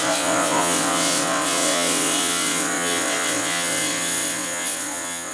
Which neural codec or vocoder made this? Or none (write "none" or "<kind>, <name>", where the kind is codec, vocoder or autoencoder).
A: vocoder, WaveNeXt